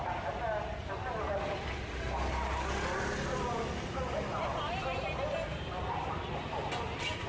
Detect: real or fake real